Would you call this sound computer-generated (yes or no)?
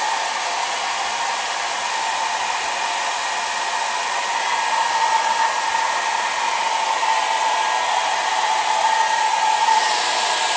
no